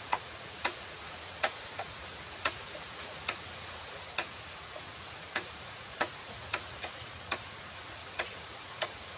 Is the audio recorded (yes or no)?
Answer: no